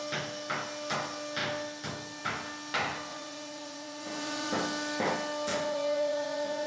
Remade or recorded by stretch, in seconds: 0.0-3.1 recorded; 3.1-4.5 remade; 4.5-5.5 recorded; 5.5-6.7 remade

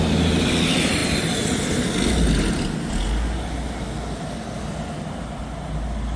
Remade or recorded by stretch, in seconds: 0.0-6.2 recorded

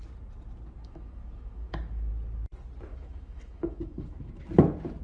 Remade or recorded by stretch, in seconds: 0.0-0.8 recorded; 0.8-2.1 remade; 2.1-2.9 recorded; 2.9-4.3 remade; 4.3-5.0 recorded

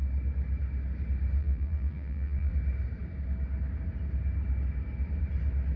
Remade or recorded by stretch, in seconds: 0.0-1.4 recorded; 1.4-2.5 remade; 2.5-5.8 recorded

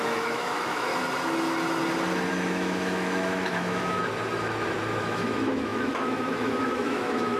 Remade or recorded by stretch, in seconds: 0.0-0.9 remade; 0.9-2.3 recorded; 2.3-4.0 remade; 4.0-5.0 recorded; 5.0-7.4 remade